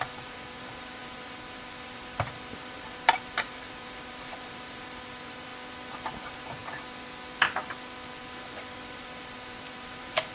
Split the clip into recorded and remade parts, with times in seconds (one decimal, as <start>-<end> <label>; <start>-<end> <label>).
0.0-5.5 remade; 5.5-6.1 recorded; 6.1-6.6 remade; 6.6-8.2 recorded; 8.2-10.3 remade